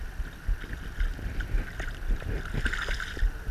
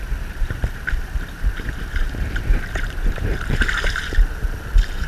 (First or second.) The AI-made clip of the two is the second